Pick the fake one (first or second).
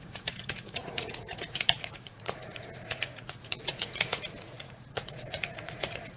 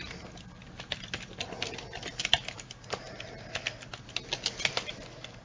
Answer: first